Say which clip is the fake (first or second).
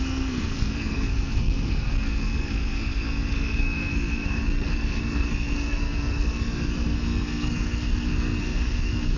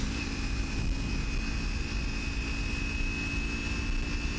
first